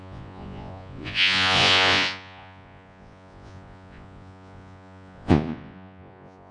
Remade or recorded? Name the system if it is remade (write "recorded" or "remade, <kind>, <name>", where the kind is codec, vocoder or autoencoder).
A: remade, vocoder, Vocos